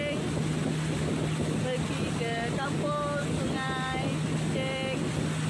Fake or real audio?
real